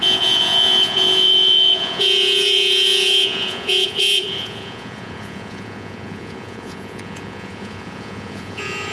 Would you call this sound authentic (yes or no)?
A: no